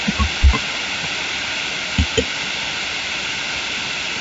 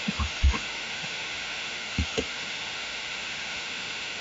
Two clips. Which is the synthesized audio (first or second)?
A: second